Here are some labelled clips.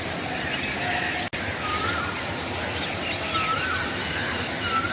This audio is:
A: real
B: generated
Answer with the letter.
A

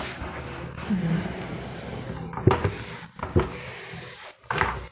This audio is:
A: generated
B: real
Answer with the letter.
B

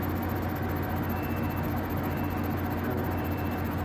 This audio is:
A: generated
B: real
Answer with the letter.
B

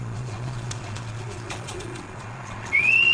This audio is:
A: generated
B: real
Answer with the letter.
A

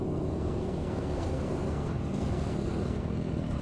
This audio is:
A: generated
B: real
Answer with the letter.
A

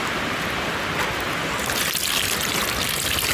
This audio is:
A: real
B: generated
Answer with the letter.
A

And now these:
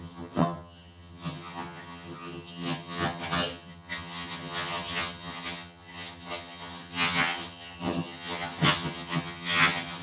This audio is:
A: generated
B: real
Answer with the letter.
A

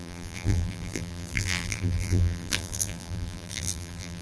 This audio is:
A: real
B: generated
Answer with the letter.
B